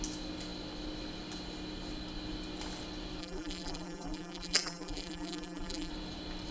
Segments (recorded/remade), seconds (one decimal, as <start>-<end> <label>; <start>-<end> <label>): 0.0-3.2 recorded; 3.2-5.9 remade; 5.9-6.5 recorded